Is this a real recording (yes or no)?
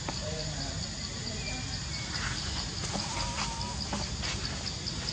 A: yes